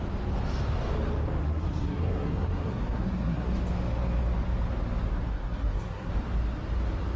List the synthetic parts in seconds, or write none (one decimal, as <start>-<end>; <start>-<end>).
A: 1.4-3.5; 5.3-6.1